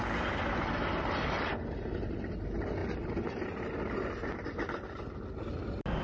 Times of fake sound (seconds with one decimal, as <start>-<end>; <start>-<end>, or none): none